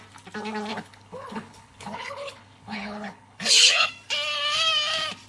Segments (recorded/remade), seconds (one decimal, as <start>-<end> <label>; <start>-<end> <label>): 0.0-0.7 recorded; 0.7-3.9 remade; 3.9-5.3 recorded